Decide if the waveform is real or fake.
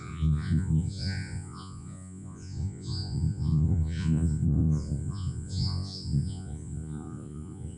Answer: fake